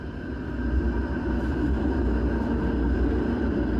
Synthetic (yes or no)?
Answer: no